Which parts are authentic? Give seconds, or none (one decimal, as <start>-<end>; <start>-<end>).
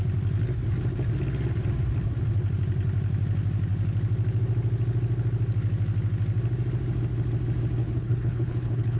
0.0-7.8